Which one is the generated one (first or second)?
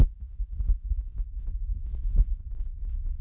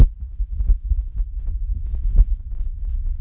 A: first